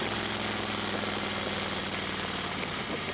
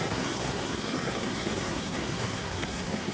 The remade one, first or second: second